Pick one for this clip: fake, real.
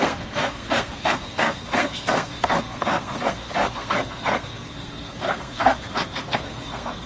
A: fake